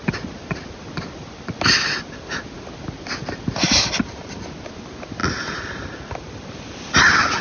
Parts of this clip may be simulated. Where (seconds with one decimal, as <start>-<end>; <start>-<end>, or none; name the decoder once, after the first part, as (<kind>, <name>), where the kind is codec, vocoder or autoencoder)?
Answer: none